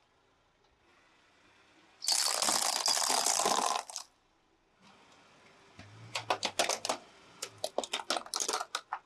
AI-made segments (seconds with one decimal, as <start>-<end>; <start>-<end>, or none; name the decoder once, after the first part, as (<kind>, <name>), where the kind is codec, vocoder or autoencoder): none